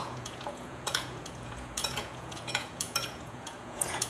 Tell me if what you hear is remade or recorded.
remade